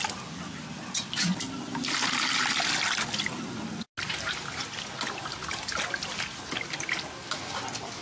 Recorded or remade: recorded